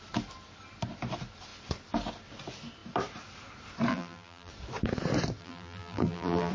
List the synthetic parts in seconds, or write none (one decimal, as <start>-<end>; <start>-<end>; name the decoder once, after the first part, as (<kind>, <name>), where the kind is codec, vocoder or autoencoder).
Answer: 3.9-4.5 (vocoder, BigVGAN v2); 5.4-6.5